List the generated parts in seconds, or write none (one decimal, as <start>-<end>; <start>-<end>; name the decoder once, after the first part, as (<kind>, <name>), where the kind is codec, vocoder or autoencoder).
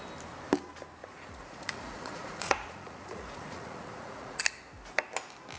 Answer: 1.0-4.4 (vocoder, Vocos)